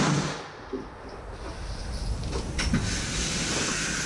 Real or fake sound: real